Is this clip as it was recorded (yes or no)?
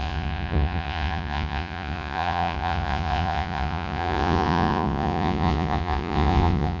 no